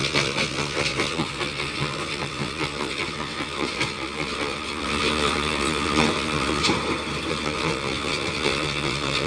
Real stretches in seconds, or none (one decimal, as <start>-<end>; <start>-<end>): 6.6-7.3

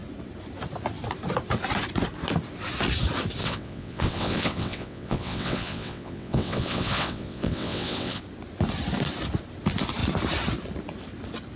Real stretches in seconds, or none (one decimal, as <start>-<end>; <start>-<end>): 0.0-3.4; 8.2-11.6

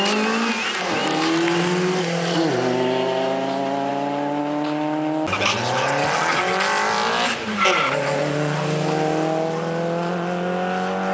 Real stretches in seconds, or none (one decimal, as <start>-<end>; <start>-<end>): 0.0-11.1

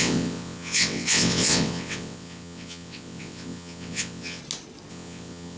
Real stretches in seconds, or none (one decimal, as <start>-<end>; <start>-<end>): 4.4-4.9

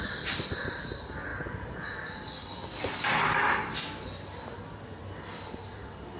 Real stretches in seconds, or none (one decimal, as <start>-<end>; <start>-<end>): 0.0-6.2

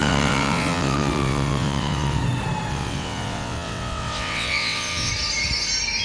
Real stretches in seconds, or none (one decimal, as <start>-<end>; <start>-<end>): 2.2-2.7; 5.1-6.0

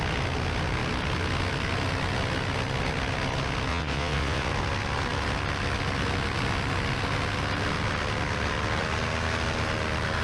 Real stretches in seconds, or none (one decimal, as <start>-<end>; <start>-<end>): 0.0-3.7; 4.5-10.2